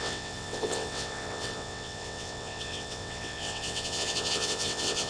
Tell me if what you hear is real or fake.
fake